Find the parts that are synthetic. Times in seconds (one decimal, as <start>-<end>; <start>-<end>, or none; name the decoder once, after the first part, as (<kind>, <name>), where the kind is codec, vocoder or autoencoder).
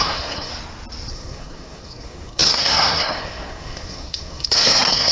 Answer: 0.0-0.5 (codec, SNAC); 1.1-5.1